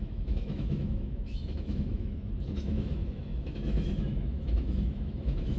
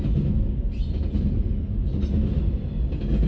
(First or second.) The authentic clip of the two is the second